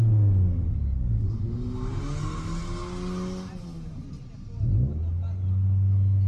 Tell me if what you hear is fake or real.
real